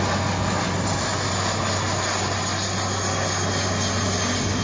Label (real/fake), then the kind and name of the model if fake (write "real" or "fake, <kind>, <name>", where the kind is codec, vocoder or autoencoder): real